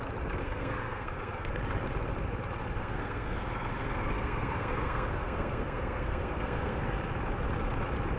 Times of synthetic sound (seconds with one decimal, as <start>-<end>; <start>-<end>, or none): 0.4-1.5; 2.8-6.8